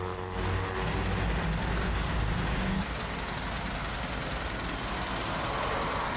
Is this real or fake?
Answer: real